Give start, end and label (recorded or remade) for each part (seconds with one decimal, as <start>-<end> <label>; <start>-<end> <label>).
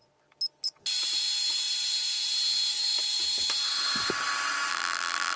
0.0-4.7 recorded; 4.7-5.4 remade